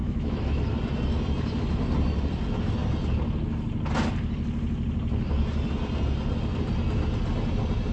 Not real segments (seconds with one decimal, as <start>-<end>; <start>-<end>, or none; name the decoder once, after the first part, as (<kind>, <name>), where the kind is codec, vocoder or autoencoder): 0.0-0.6 (autoencoder, DAC-VAE)